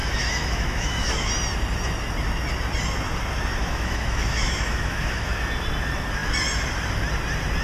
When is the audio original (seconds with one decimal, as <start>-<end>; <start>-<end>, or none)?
1.3-3.6; 5.3-7.6